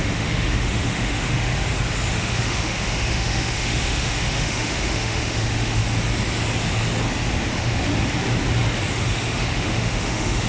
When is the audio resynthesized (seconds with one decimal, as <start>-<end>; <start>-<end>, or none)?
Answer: 0.0-1.5; 2.1-5.8; 7.5-7.9; 8.9-10.5